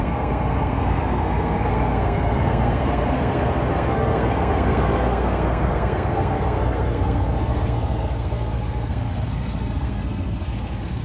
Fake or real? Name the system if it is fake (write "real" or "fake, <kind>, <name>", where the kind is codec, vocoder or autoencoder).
fake, codec, SNAC